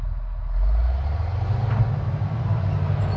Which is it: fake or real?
real